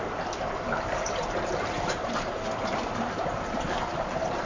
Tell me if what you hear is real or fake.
fake